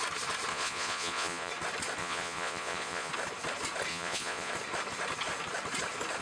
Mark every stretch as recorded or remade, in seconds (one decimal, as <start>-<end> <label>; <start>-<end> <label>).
0.0-0.5 recorded; 0.5-1.5 remade; 1.5-2.0 recorded; 2.0-3.1 remade; 3.1-3.9 recorded; 3.9-4.5 remade; 4.5-6.2 recorded